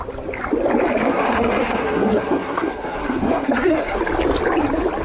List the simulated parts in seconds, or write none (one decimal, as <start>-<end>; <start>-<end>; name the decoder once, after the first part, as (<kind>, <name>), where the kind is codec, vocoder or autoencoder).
1.0-4.0 (codec, SNAC)